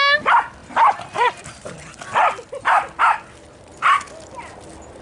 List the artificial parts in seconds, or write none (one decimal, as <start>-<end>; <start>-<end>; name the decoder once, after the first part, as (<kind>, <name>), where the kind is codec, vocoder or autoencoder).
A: 0.6-1.7 (vocoder, BigVGAN v2)